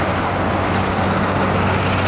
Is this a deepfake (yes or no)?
no